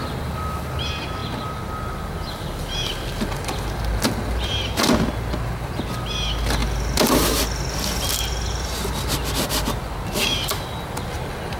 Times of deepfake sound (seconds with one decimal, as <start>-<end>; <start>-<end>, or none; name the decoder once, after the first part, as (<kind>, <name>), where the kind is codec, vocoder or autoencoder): none